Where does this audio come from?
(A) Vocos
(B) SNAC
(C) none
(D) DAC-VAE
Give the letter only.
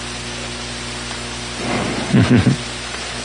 C